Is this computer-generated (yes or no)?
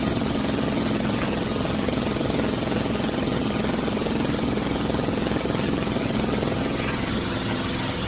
yes